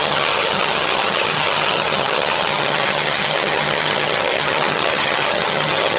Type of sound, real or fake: fake